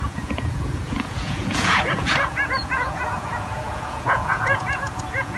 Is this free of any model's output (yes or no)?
no